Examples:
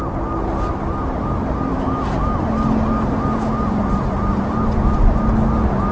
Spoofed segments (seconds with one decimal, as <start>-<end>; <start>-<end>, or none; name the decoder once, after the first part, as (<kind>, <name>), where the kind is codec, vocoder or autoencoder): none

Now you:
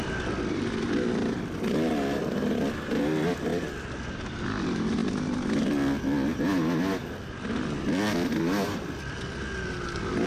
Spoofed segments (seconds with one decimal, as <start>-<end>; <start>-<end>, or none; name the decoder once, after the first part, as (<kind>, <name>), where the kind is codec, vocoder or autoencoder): none

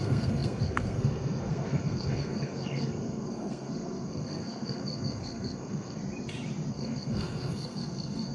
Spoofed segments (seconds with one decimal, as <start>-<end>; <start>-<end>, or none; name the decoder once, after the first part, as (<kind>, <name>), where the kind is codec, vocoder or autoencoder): 0.0-6.0 (codec, SNAC); 6.7-8.3

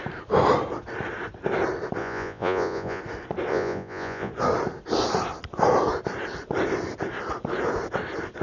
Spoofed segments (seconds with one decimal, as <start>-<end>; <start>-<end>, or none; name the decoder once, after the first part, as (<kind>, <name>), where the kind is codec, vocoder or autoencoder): 2.0-3.0 (vocoder, Vocos); 3.5-4.3

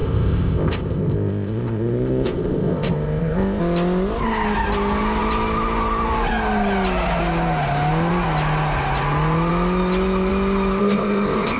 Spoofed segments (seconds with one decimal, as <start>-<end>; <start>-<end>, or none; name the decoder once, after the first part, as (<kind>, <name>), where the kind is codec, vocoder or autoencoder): 0.0-3.6 (codec, ZipCodec); 10.8-11.6

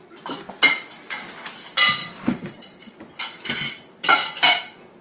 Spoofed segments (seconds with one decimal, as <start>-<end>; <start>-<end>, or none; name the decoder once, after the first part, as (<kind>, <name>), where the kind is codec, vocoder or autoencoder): 2.0-3.0 (vocoder, Vocos)

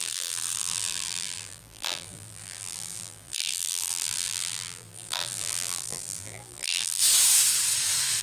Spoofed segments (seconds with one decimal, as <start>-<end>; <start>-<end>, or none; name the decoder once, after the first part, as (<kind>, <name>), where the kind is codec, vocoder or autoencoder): 0.0-7.0 (vocoder, BigVGAN v2)

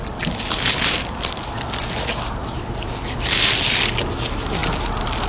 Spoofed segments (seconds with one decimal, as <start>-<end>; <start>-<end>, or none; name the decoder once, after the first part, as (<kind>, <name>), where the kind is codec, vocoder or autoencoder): 2.4-3.0 (vocoder, BigVGAN v2)